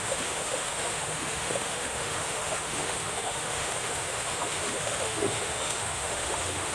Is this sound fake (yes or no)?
yes